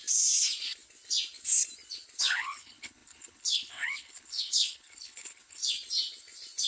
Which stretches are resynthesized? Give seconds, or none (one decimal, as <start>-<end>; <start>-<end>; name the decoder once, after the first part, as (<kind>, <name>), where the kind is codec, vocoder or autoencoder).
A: 2.2-5.6 (codec, HILCodec)